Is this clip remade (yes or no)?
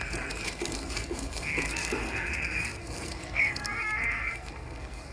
yes